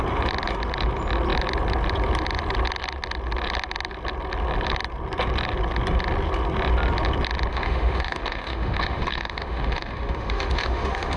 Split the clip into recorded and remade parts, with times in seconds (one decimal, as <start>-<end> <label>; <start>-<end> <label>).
0.0-7.5 recorded; 7.5-11.2 remade